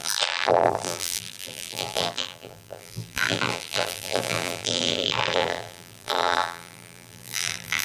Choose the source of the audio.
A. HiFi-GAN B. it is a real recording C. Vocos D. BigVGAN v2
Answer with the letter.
D